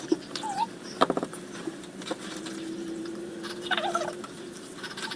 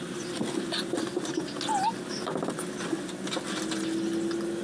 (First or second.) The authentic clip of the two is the second